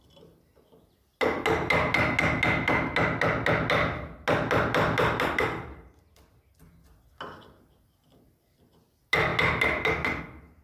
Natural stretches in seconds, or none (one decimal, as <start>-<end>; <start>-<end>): 0.0-10.6